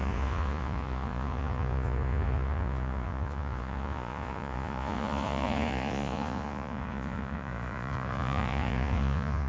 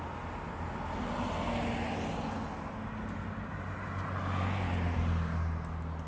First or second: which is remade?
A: first